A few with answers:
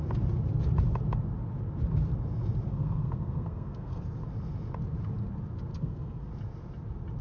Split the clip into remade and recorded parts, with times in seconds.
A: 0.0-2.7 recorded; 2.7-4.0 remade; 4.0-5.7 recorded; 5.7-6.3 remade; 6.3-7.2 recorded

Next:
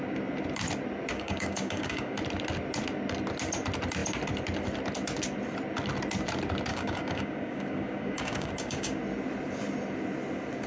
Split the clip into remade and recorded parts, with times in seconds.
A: 0.0-1.1 recorded; 1.1-2.2 remade; 2.2-6.7 recorded; 6.7-9.0 remade; 9.0-10.7 recorded

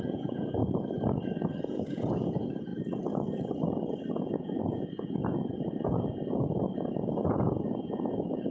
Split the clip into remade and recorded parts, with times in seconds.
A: 0.0-0.6 remade; 0.6-1.6 recorded; 1.6-2.7 remade; 2.7-4.1 recorded; 4.1-8.5 remade

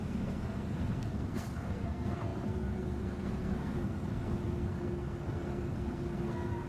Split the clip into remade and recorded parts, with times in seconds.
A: 0.0-6.7 remade

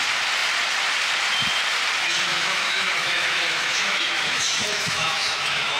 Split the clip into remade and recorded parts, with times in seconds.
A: 0.0-2.3 recorded; 2.3-5.8 remade

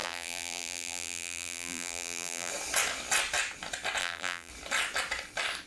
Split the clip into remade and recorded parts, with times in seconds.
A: 0.0-2.5 remade; 2.5-4.0 recorded; 4.0-4.5 remade; 4.5-5.7 recorded